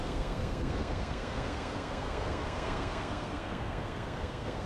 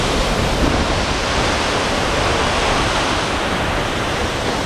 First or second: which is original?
second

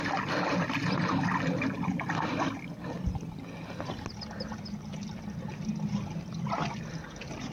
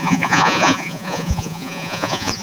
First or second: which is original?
first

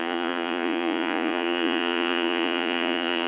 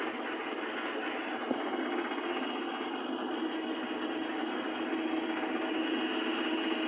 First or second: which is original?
second